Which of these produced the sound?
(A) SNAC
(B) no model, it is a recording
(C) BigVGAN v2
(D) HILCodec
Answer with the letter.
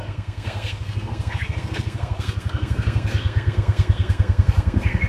A